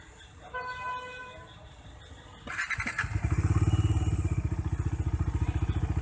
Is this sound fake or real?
real